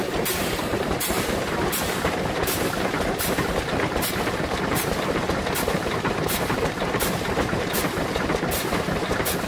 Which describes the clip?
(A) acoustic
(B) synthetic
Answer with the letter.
B